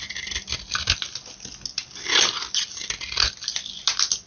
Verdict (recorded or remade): recorded